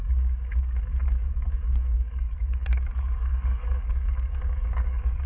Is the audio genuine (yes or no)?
no